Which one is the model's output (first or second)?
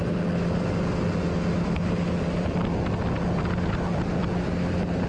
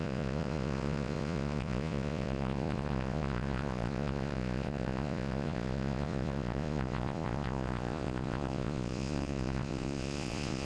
second